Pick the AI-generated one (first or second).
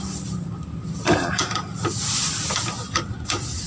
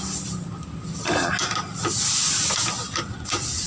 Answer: first